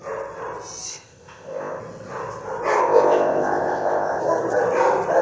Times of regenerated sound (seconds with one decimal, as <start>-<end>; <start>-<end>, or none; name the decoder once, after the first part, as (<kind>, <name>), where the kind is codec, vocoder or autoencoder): 0.9-1.8 (codec, ZipCodec); 2.8-4.2

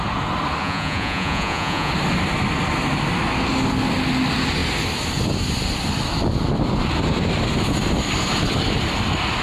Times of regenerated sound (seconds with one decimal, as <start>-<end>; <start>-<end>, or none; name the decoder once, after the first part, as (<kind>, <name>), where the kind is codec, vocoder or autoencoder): 0.6-1.9 (vocoder, Vocos)

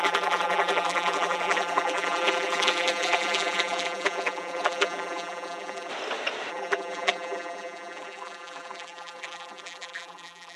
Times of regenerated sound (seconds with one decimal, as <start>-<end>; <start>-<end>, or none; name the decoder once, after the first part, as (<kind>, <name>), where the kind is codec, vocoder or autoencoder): 0.0-5.9 (vocoder, BigVGAN v2); 6.5-10.6

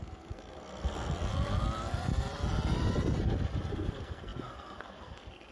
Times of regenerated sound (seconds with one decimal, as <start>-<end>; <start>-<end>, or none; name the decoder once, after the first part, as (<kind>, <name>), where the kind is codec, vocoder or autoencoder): 0.0-1.3 (codec, SNAC); 3.7-5.5

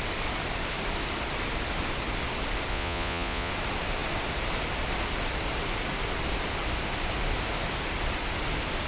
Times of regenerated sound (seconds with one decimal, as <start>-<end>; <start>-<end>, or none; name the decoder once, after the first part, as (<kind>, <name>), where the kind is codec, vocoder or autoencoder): 2.7-3.5 (vocoder, Vocos)